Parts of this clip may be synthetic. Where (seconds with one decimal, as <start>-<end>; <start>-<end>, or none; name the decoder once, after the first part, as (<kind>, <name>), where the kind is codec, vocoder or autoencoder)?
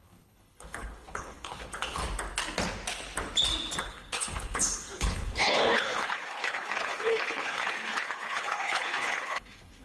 0.0-2.0 (codec, HILCodec); 3.8-9.8